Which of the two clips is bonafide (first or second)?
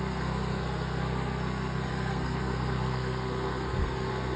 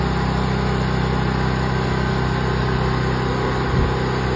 second